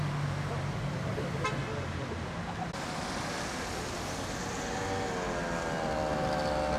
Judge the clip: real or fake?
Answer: real